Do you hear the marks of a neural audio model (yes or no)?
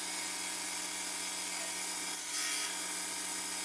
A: no